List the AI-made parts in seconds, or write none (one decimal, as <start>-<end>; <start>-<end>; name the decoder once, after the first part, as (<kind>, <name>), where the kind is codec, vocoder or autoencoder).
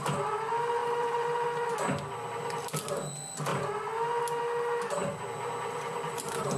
0.8-1.7 (vocoder, BigVGAN v2); 5.0-6.6